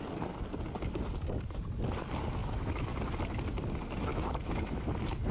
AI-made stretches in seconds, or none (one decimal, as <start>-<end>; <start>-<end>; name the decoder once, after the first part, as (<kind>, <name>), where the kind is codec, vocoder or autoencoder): 2.4-2.9 (autoencoder, DAC-VAE); 4.1-4.8

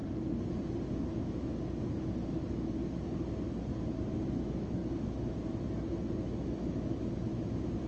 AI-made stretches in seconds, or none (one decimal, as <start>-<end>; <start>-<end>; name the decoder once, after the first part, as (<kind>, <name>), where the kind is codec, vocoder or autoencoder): 0.9-1.5 (autoencoder, DAC-VAE); 2.3-2.8; 4.3-4.8; 6.2-7.9

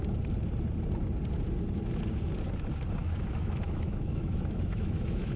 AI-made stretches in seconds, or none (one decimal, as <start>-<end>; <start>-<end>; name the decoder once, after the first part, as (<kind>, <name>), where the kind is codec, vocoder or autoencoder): 3.0-5.4 (autoencoder, DAC-VAE)

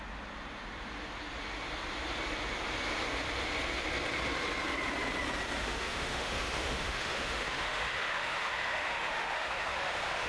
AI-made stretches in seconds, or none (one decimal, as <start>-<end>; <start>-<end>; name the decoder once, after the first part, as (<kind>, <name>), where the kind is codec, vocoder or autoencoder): 5.6-10.3 (autoencoder, DAC-VAE)

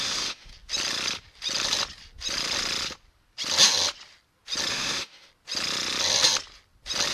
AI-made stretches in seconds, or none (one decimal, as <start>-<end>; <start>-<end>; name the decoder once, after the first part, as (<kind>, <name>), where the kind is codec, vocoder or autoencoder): 0.0-0.5 (autoencoder, DAC-VAE); 4.7-5.3

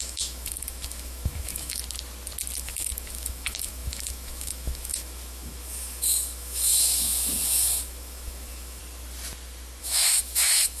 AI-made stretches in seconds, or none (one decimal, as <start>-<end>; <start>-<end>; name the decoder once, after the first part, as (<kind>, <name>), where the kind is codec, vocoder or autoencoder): 0.0-1.8 (autoencoder, DAC-VAE); 2.6-8.8; 9.8-10.8